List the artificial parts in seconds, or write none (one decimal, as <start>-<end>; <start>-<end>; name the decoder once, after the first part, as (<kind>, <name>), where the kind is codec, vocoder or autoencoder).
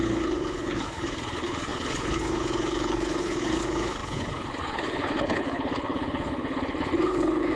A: 0.0-7.6 (codec, HILCodec)